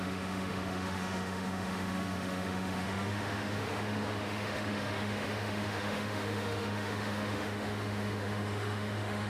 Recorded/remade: remade